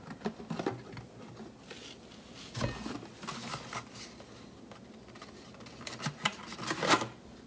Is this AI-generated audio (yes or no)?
no